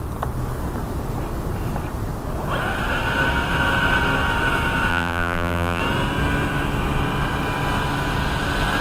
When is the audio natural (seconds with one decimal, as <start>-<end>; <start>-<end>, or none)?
0.0-4.9; 5.8-8.8